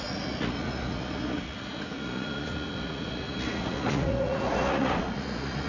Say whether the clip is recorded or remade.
remade